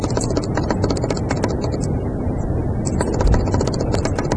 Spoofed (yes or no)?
no